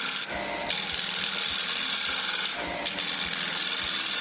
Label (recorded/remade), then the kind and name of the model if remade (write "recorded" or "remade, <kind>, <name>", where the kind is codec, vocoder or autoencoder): recorded